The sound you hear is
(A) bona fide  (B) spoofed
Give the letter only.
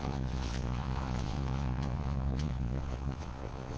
B